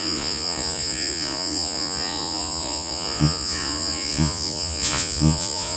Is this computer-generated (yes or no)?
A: yes